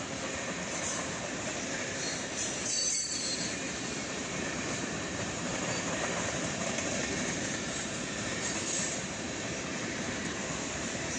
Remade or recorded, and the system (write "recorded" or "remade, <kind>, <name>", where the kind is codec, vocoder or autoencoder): remade, vocoder, BigVGAN v2